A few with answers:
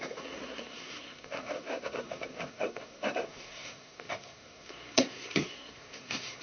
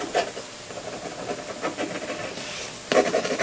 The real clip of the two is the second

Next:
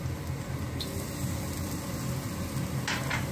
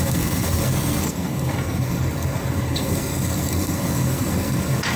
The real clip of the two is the first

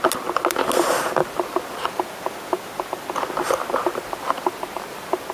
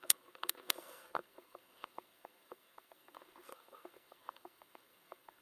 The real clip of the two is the first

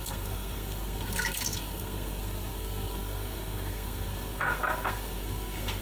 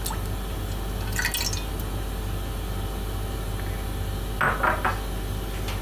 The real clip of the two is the second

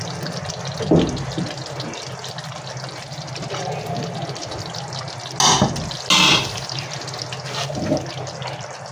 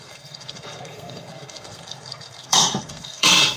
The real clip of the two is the first